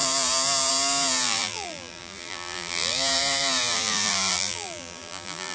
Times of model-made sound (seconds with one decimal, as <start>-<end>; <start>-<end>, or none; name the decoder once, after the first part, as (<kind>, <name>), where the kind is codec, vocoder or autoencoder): 0.0-5.5 (vocoder, BigVGAN v2)

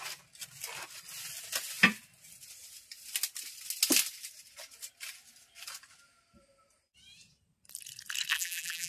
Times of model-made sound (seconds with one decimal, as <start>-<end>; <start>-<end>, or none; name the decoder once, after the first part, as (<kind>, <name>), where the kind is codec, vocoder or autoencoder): 8.3-8.9 (vocoder, BigVGAN v2)